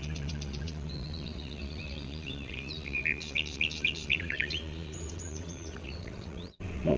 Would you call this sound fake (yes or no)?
yes